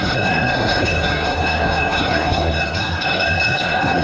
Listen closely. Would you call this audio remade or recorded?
remade